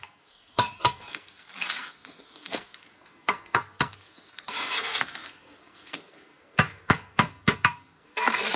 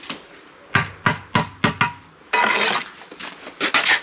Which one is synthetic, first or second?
first